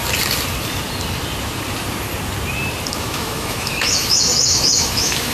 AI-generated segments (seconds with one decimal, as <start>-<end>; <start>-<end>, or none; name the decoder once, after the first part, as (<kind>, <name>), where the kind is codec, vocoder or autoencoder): 3.0-5.3 (autoencoder, DAC-VAE)